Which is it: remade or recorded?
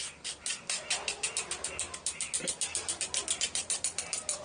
recorded